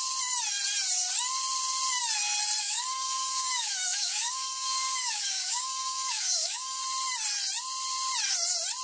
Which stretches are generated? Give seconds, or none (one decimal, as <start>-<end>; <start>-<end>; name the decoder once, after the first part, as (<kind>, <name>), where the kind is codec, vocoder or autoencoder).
2.6-6.8 (codec, DAC)